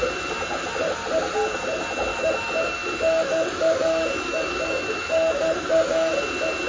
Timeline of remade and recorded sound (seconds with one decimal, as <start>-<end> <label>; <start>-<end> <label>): 0.0-2.1 recorded; 2.1-6.1 remade; 6.1-6.7 recorded